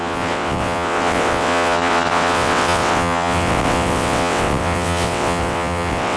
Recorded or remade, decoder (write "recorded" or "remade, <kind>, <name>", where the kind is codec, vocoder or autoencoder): remade, vocoder, WaveNeXt